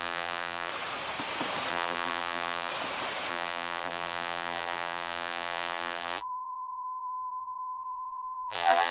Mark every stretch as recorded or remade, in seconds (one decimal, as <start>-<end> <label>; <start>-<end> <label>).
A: 0.0-0.7 remade; 0.7-1.7 recorded; 1.7-2.7 remade; 2.7-3.3 recorded; 3.3-8.9 remade